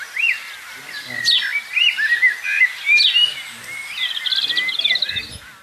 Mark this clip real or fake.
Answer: real